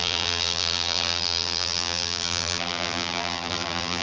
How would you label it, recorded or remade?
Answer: remade